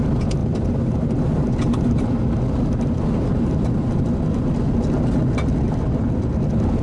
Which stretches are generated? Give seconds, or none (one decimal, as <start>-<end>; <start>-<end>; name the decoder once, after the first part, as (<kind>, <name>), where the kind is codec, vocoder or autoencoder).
0.4-2.0 (vocoder, BigVGAN v2); 3.3-4.0